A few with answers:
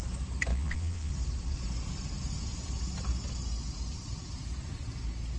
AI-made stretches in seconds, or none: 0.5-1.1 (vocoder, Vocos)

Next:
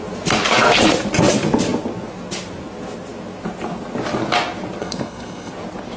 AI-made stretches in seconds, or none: 4.8-5.5 (codec, SNAC)

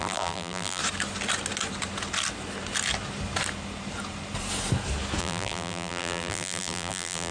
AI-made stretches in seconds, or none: 0.0-0.8 (vocoder, BigVGAN v2); 5.2-7.3

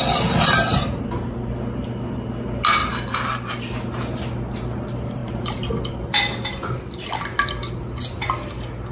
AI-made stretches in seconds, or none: 2.8-3.5 (vocoder, BigVGAN v2); 5.2-5.7

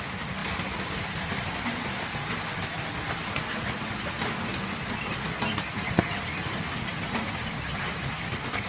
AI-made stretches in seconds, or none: none

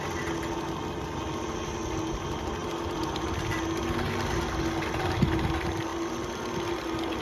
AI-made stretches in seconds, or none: none